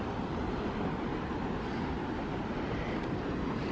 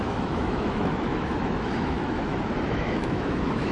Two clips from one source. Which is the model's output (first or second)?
second